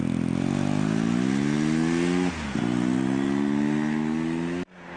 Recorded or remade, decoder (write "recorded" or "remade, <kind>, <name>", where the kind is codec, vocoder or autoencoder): recorded